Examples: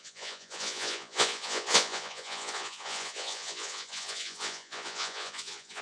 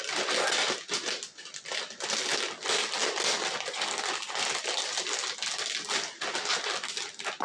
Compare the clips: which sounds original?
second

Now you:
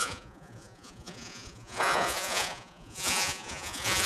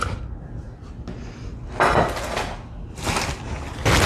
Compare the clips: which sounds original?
second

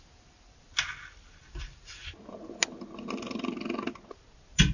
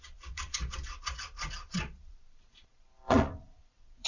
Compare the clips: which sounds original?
first